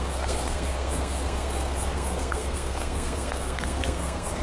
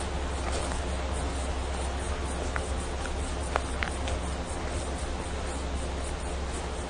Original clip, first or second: second